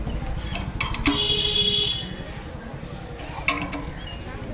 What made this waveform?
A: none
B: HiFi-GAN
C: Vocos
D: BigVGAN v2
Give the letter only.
A